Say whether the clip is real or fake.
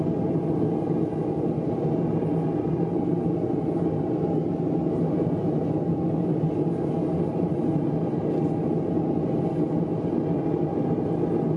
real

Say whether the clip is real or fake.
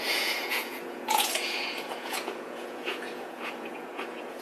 fake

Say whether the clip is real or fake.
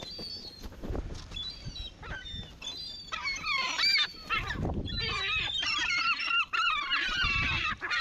real